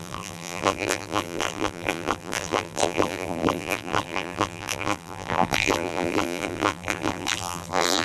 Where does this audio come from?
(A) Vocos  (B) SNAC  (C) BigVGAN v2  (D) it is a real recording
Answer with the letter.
C